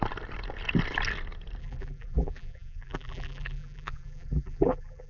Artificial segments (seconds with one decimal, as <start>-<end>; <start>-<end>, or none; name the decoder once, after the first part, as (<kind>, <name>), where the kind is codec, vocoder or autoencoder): 1.6-5.1 (vocoder, BigVGAN v2)